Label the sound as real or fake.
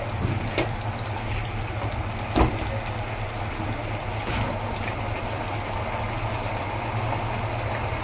real